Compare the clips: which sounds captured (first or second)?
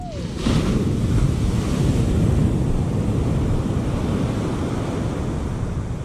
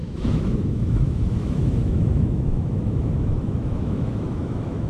first